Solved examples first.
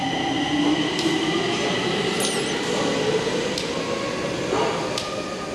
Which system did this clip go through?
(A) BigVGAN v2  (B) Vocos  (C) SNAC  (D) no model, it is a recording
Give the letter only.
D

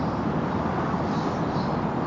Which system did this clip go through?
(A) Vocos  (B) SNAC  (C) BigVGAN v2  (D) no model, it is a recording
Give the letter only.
D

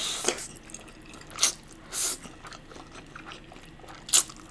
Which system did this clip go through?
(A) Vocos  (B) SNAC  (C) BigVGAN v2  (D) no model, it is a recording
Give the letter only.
D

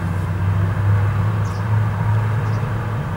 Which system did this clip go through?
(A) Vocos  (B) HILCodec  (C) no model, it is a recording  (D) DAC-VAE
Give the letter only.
C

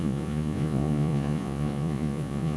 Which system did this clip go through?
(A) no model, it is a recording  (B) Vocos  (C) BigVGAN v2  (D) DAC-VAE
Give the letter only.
B